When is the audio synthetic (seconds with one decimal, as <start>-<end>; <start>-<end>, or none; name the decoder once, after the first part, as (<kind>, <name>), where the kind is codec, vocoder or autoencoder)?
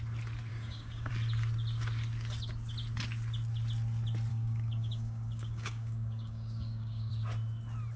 0.5-1.1 (codec, DAC); 4.3-7.1